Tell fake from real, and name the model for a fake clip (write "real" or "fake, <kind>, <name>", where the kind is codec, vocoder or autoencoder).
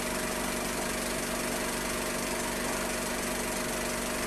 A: real